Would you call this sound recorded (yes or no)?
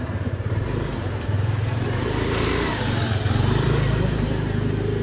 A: no